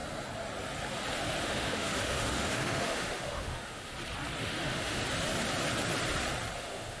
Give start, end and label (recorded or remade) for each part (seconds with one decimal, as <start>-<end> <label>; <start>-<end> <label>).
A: 0.0-1.4 recorded; 1.4-3.9 remade; 3.9-4.4 recorded; 4.4-5.0 remade; 5.0-6.6 recorded; 6.6-7.0 remade